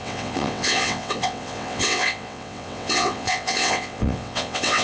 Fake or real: fake